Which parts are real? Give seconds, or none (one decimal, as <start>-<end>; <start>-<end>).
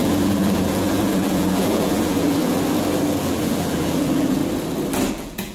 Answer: 2.5-3.2; 4.4-5.1